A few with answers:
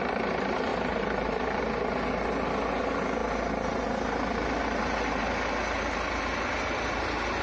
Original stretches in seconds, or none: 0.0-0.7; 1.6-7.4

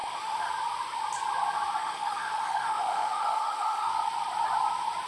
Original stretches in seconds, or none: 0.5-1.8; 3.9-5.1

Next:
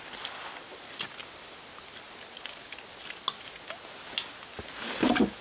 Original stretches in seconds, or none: 0.0-5.4